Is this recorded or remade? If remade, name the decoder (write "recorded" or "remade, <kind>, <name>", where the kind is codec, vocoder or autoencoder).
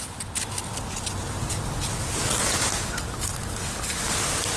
recorded